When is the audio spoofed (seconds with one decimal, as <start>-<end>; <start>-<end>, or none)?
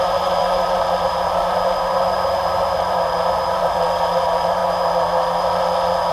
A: 0.0-4.6